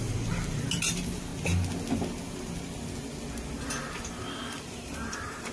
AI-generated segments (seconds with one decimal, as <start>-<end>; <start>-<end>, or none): 0.0-1.3; 4.6-5.5